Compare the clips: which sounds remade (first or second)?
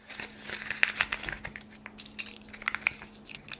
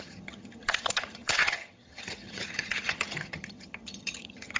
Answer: second